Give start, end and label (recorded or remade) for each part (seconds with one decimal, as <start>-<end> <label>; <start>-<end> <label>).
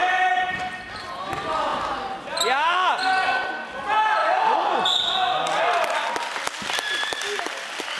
0.0-4.2 recorded; 4.2-5.6 remade; 5.6-8.0 recorded